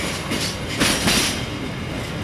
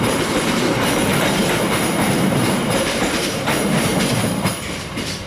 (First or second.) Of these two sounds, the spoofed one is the second